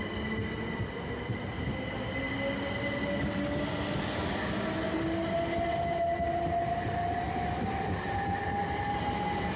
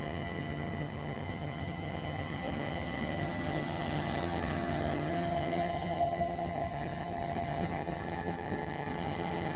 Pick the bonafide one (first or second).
first